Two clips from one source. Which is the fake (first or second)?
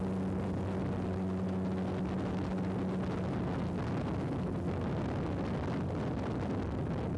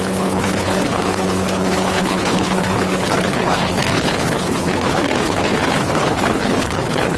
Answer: second